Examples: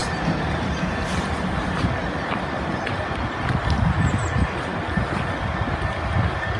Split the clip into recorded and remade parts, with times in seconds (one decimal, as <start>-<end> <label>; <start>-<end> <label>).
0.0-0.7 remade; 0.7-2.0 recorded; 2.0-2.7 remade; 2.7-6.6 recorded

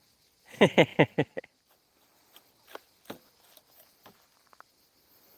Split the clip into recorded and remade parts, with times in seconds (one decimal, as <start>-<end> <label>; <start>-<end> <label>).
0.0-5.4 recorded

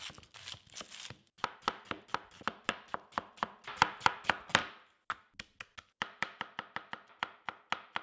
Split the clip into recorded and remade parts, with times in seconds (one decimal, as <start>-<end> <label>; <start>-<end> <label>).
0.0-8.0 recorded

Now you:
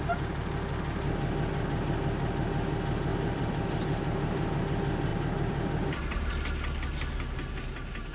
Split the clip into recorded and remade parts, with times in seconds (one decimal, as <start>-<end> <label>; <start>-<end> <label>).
0.0-3.1 recorded; 3.1-4.6 remade; 4.6-5.1 recorded; 5.1-6.3 remade; 6.3-8.1 recorded